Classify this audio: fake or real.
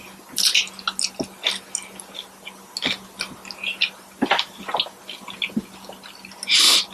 real